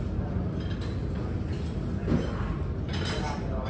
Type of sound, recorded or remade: recorded